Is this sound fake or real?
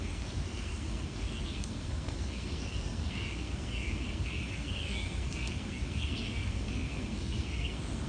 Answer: fake